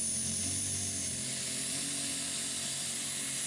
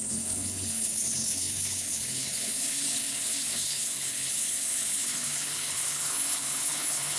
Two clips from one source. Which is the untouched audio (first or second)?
first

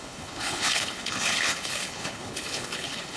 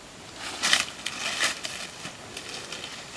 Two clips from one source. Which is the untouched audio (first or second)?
second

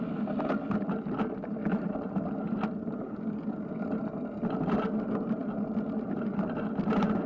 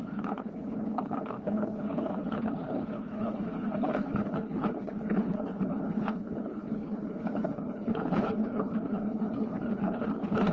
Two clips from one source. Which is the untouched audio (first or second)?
first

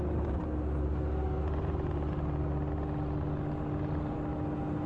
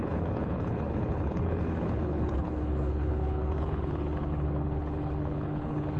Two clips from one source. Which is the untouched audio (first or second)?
first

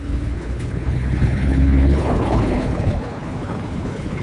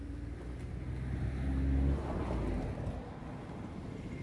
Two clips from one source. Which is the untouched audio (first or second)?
second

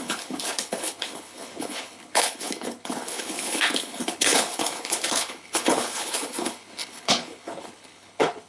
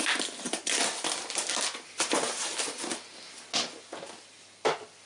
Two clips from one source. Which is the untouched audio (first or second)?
second